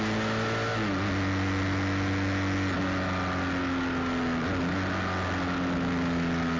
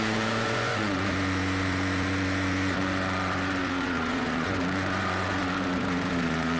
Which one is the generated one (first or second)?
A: second